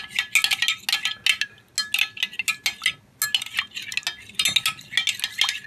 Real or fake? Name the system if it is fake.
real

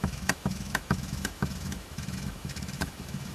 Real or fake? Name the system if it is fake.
fake, autoencoder, DAC-VAE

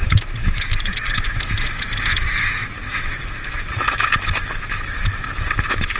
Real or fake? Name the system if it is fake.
fake, autoencoder, DAC-VAE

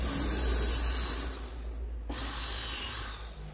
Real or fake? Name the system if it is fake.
real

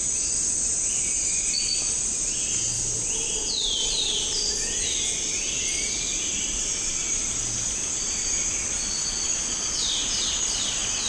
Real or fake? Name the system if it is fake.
real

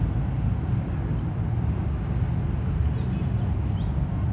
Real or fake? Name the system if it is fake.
real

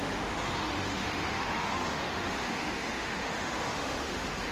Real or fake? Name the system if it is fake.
fake, autoencoder, DAC-VAE